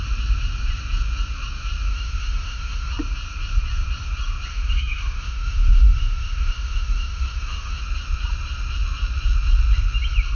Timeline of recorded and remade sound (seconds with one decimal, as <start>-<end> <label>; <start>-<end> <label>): 0.0-1.9 recorded; 1.9-2.9 remade; 2.9-4.5 recorded; 4.5-7.8 remade; 7.8-10.3 recorded